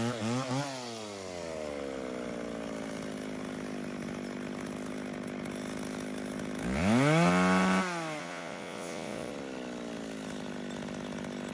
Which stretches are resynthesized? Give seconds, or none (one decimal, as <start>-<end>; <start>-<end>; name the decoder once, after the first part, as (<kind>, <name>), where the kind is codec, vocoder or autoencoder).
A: 8.2-9.3 (vocoder, Vocos)